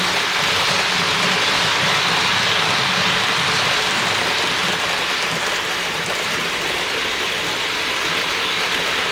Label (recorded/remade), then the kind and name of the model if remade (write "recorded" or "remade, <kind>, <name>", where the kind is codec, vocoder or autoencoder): recorded